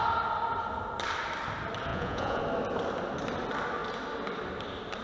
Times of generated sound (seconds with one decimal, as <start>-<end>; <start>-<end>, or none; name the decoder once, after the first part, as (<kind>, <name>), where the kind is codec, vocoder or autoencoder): 1.9-2.4 (vocoder, Vocos)